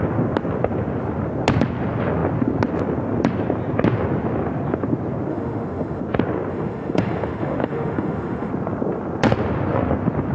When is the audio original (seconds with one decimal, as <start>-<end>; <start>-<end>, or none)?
0.0-5.3; 6.0-6.5; 8.5-10.3